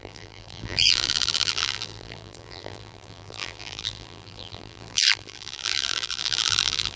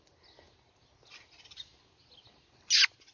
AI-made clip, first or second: first